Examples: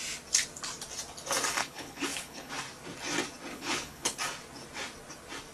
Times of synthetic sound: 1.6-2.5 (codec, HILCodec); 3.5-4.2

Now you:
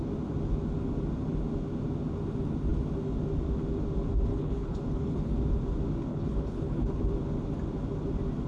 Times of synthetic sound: 4.3-5.4 (codec, HILCodec); 6.1-7.0